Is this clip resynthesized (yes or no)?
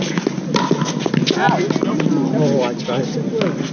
no